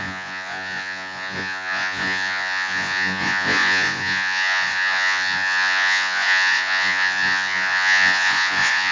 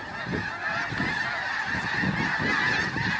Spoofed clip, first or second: first